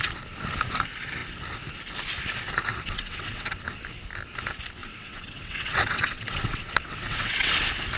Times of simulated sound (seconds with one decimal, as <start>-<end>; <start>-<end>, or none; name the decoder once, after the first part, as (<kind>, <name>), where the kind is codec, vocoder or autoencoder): 2.7-3.6 (vocoder, WaveNeXt); 4.8-7.5